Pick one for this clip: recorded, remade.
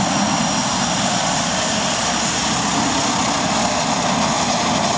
recorded